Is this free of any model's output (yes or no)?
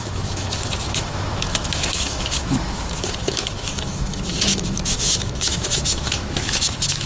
no